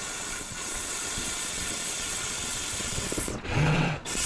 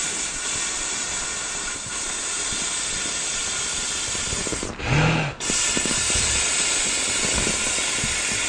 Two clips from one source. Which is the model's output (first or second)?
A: first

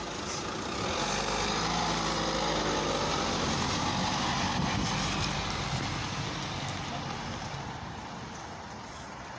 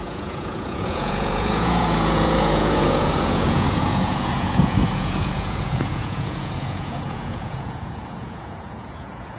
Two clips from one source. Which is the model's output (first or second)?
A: second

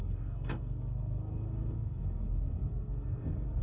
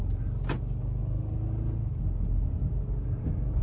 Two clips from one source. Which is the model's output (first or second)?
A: first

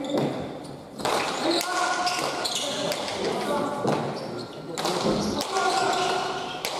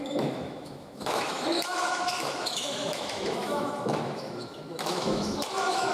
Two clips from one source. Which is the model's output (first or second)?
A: second